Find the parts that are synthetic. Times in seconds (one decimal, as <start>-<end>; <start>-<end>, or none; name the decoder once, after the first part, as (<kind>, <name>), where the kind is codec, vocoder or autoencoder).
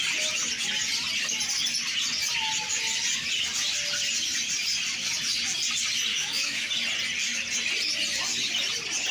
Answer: 6.1-6.7 (autoencoder, DAC-VAE)